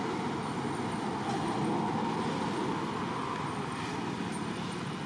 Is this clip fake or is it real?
real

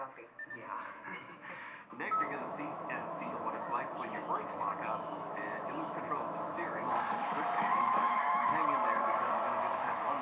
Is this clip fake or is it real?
fake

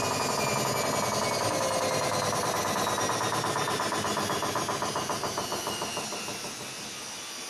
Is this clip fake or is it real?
real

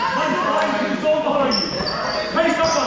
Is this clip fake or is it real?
real